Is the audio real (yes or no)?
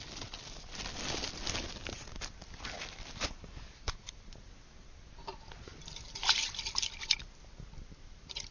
yes